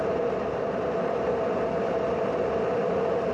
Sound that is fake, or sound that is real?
real